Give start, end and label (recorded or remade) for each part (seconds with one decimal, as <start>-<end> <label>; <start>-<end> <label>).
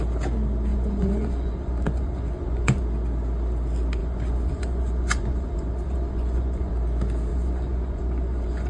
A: 0.0-0.7 recorded; 0.7-2.8 remade; 2.8-4.0 recorded; 4.0-6.7 remade; 6.7-7.3 recorded; 7.3-8.7 remade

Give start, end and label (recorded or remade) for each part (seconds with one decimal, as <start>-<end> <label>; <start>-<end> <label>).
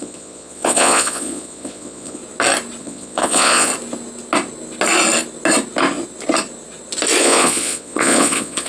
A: 0.0-2.2 remade; 2.2-2.8 recorded; 2.8-3.7 remade; 3.7-7.2 recorded; 7.2-8.7 remade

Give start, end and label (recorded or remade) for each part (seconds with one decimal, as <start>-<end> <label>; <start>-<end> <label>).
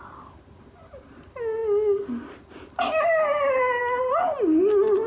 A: 0.0-5.1 recorded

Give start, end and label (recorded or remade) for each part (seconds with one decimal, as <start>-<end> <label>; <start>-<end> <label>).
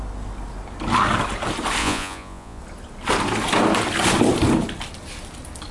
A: 0.0-1.8 recorded; 1.8-2.6 remade; 2.6-5.7 recorded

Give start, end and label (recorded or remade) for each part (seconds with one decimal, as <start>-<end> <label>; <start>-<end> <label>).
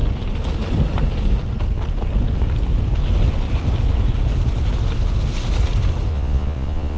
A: 0.0-6.1 recorded; 6.1-7.0 remade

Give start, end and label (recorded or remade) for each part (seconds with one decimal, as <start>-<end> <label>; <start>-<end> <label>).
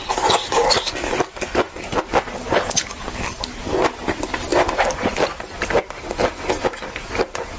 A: 0.0-7.6 recorded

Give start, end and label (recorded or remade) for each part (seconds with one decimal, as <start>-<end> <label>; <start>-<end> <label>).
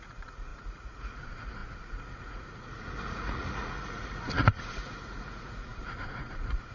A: 0.0-6.7 remade